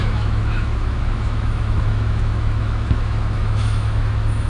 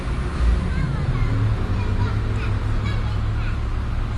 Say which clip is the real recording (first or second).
second